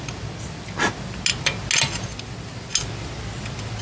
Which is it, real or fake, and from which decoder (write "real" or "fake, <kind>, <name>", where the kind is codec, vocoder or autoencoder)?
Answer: real